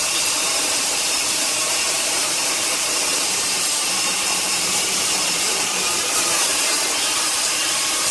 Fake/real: fake